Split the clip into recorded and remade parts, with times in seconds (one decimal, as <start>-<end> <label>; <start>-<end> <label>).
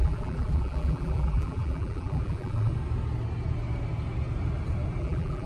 0.0-2.7 remade; 2.7-5.0 recorded; 5.0-5.5 remade